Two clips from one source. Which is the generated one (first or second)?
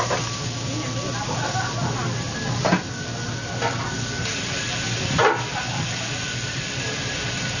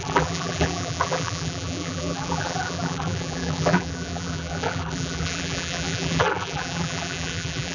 second